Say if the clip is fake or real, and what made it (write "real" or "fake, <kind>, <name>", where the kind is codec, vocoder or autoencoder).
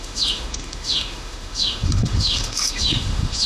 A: fake, autoencoder, DAC-VAE